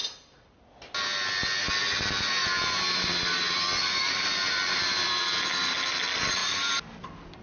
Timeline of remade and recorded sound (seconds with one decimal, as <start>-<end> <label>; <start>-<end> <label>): 0.0-2.4 recorded; 2.4-3.6 remade; 3.6-4.0 recorded; 4.0-5.3 remade; 5.3-6.4 recorded; 6.4-7.0 remade; 7.0-7.4 recorded

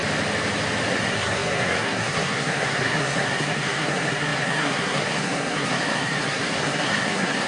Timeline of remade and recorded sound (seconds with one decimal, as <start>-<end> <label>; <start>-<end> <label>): 0.0-0.9 recorded; 0.9-7.5 remade